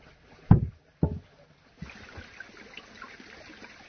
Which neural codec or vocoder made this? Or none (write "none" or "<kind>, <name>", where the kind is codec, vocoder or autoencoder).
none